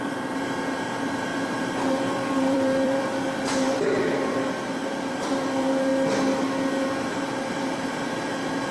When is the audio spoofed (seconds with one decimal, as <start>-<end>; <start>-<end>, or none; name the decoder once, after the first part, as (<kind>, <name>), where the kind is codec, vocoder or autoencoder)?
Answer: 0.0-5.9 (vocoder, BigVGAN v2); 6.7-8.7